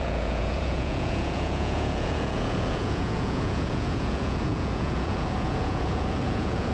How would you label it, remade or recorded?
remade